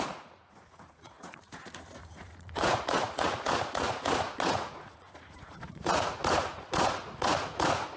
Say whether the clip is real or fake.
fake